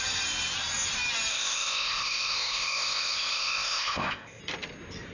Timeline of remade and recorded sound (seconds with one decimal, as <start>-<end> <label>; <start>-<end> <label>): 0.0-1.3 recorded; 1.3-4.4 remade; 4.4-5.1 recorded